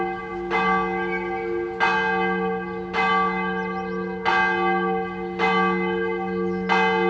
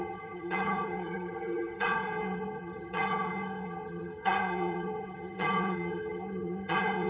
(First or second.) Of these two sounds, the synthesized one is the second